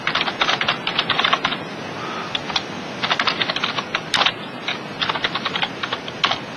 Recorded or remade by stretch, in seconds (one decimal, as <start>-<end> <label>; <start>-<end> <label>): 0.0-6.6 recorded